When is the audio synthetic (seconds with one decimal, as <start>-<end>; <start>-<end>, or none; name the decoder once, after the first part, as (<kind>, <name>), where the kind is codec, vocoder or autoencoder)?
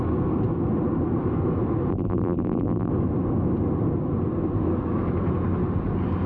1.9-2.9 (vocoder, BigVGAN v2)